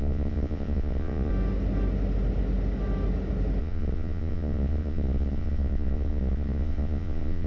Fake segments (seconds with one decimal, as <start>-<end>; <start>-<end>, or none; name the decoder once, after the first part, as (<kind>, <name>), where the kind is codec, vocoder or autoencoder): 0.0-1.3 (vocoder, Vocos); 3.6-7.5